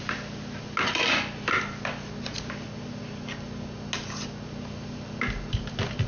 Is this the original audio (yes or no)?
yes